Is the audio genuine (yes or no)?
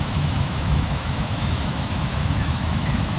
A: no